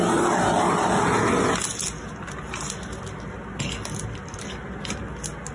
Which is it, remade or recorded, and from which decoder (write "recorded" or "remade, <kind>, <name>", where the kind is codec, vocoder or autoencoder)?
recorded